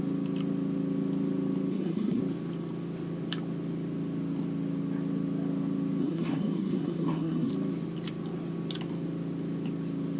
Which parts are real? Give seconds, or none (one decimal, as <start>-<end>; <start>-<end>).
0.0-1.7; 2.2-6.0; 7.5-10.2